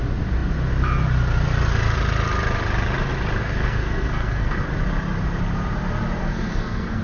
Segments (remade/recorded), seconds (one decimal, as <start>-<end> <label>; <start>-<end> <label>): 0.0-3.4 recorded; 3.4-4.7 remade; 4.7-6.2 recorded; 6.2-7.0 remade